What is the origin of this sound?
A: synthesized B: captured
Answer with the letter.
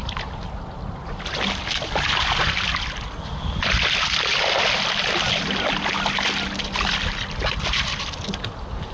B